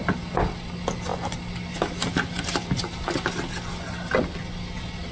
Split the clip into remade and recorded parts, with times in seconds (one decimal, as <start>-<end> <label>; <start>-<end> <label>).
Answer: 0.0-5.1 recorded